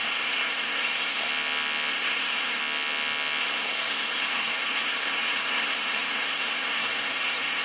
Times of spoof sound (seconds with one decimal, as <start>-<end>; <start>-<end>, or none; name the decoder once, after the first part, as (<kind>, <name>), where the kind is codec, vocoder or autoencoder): 0.0-1.3 (codec, SNAC); 1.9-2.6; 3.4-7.6